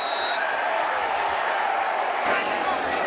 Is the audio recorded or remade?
recorded